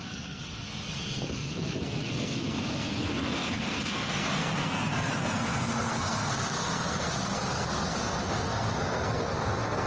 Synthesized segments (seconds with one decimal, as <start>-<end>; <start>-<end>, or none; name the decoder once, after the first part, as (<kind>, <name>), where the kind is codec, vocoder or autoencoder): 0.0-9.9 (codec, SNAC)